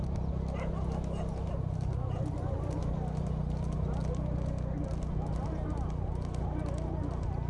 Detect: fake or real real